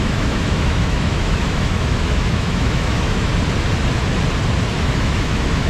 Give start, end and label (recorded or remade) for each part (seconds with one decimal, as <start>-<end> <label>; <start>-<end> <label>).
0.0-3.3 remade; 3.3-4.8 recorded; 4.8-5.7 remade